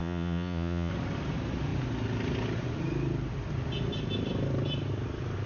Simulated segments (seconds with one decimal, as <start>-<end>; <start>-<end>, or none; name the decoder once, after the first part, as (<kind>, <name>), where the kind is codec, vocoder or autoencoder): 0.0-0.9 (vocoder, Vocos)